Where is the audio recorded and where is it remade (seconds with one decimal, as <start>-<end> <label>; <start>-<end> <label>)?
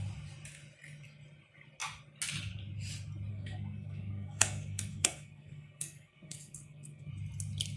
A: 0.0-3.3 recorded; 3.3-7.1 remade; 7.1-7.8 recorded